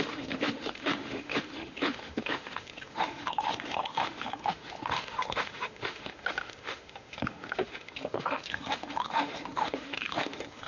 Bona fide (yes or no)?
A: no